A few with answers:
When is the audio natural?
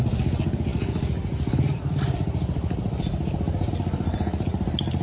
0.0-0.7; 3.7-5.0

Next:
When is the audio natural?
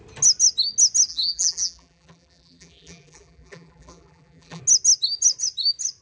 0.0-1.1; 4.6-6.0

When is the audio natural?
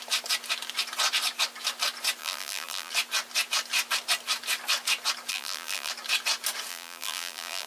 0.0-2.2; 2.9-5.3; 5.9-6.7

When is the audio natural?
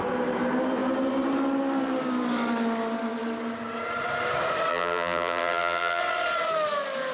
0.0-4.7; 6.0-7.1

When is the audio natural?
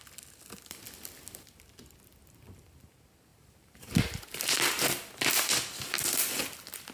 0.0-3.3; 5.1-6.9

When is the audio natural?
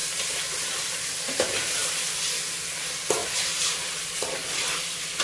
0.9-3.2; 3.9-5.2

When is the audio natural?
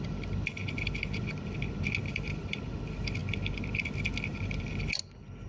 0.6-2.1; 3.2-5.1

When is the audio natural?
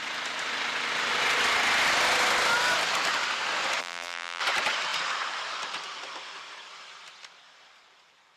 0.0-3.8; 4.4-8.4